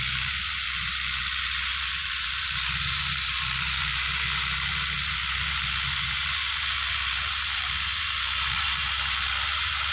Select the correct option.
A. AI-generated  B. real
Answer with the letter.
A